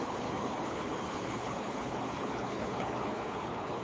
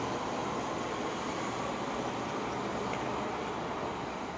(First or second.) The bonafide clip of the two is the second